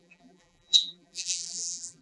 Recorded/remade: remade